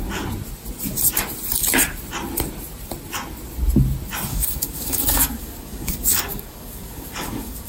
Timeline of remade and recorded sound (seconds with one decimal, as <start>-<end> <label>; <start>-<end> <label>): 0.0-4.3 recorded; 4.3-7.7 remade